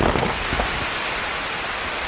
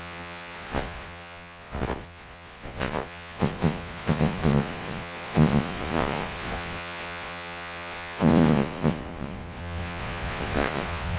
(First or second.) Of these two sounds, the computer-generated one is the second